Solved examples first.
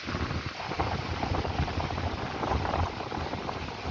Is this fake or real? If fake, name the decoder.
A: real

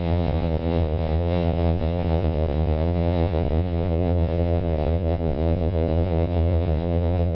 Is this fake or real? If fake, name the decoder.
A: fake, vocoder, Vocos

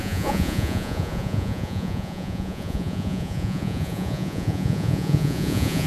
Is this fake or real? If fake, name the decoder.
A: fake, vocoder, Vocos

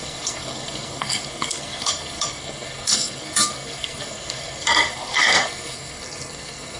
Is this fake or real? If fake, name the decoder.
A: fake, codec, SNAC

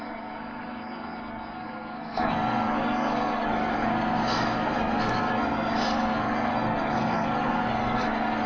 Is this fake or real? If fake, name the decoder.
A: fake, codec, SNAC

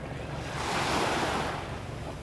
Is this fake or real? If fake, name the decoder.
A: real